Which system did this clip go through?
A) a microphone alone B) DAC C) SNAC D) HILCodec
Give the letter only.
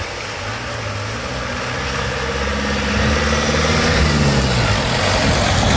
A